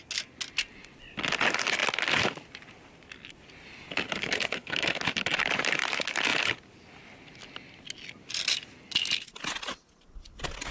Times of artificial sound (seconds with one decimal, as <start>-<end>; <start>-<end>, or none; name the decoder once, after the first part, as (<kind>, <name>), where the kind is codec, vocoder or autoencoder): 4.2-5.0 (codec, SNAC)